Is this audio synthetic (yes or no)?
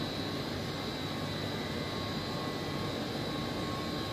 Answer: no